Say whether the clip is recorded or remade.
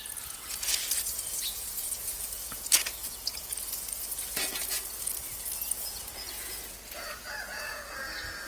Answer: remade